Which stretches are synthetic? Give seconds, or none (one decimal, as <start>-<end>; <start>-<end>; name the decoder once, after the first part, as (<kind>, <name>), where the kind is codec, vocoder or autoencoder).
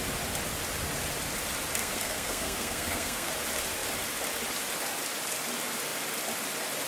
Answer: 1.8-3.3 (codec, SNAC)